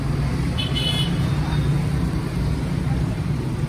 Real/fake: real